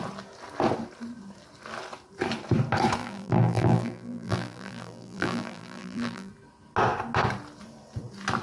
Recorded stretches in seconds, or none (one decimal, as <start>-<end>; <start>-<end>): 0.0-3.0; 6.3-8.4